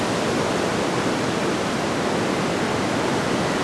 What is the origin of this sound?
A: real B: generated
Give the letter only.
A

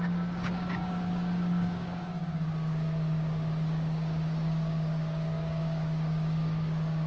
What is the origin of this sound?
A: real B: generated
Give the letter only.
B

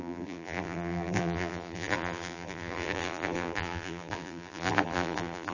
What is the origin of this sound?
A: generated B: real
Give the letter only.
A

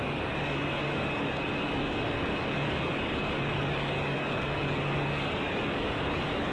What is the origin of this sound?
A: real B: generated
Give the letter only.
B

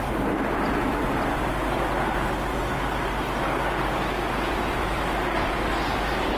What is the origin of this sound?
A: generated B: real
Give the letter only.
B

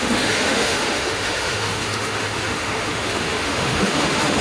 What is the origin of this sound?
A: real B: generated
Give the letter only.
B